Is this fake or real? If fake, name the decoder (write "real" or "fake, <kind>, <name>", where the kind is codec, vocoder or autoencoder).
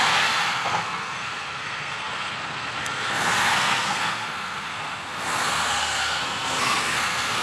fake, codec, SNAC